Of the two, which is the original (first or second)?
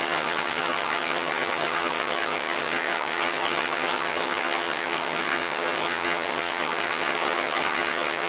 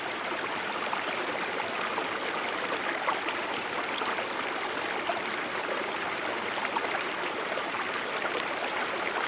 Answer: second